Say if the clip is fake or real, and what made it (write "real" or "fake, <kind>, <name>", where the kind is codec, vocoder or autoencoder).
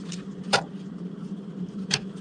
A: fake, vocoder, BigVGAN v2